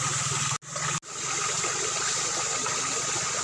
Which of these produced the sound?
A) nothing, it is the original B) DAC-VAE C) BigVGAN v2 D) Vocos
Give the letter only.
A